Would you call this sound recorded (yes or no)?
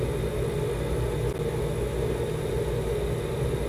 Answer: yes